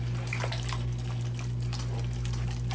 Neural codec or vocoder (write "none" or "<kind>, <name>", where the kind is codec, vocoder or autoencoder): none